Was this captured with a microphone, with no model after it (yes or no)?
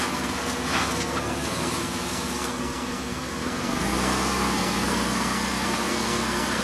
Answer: no